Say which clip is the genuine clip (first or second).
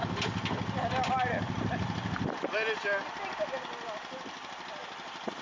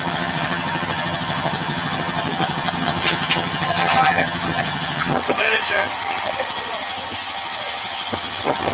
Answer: first